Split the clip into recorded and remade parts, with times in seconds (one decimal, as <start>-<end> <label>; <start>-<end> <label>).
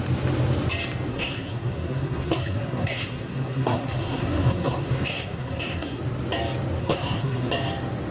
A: 0.0-1.1 recorded; 1.1-6.0 remade; 6.0-6.8 recorded; 6.8-7.5 remade; 7.5-8.1 recorded